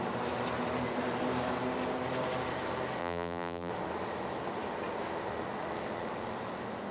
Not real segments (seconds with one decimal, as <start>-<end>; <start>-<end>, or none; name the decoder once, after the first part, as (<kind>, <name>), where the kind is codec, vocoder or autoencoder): 3.0-3.7 (vocoder, BigVGAN v2)